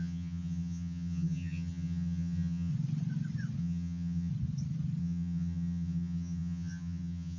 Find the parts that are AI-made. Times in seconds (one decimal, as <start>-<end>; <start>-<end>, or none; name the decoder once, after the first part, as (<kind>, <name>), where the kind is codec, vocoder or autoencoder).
0.0-2.7 (vocoder, HiFi-GAN); 3.6-4.3; 5.0-7.4